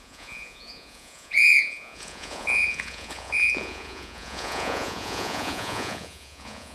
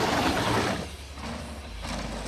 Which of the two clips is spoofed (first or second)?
first